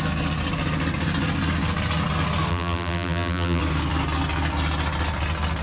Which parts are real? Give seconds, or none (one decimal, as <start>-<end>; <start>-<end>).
0.0-2.5; 3.6-5.6